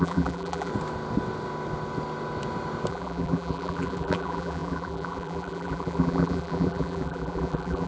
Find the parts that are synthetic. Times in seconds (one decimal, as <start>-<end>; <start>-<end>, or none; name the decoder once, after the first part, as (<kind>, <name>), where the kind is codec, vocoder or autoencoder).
0.0-0.7 (vocoder, BigVGAN v2); 2.9-7.9